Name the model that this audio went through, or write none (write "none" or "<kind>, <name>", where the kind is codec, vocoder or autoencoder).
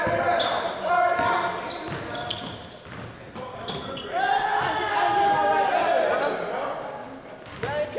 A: none